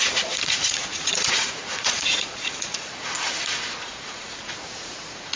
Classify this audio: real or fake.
fake